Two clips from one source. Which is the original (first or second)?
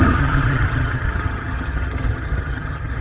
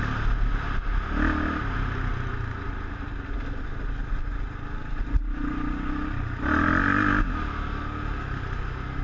second